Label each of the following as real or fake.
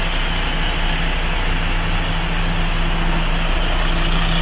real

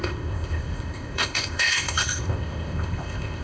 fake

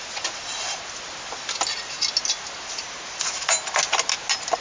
real